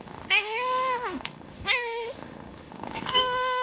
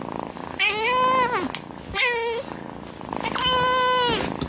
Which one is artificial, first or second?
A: first